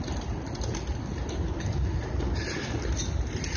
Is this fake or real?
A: real